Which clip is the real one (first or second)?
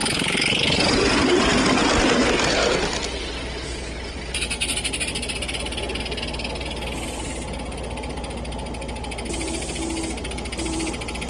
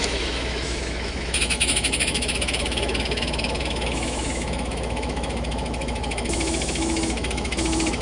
first